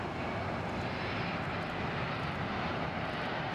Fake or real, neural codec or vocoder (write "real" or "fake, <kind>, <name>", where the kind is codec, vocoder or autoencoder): real